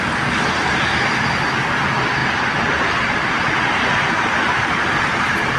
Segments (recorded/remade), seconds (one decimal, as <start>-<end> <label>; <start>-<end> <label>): 0.0-5.6 recorded